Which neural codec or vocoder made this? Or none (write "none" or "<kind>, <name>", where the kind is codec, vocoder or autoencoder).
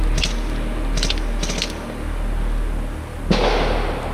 none